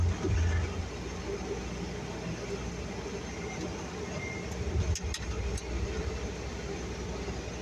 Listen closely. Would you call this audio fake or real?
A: real